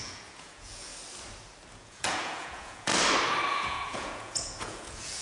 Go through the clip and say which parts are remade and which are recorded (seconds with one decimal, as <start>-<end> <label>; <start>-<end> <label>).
0.0-0.9 remade; 0.9-1.7 recorded; 1.7-2.9 remade; 2.9-3.5 recorded; 3.5-5.2 remade